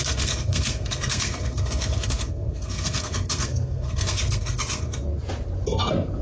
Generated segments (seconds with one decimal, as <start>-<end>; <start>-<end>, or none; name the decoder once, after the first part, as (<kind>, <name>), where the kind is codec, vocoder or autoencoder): 0.0-5.0 (codec, SNAC)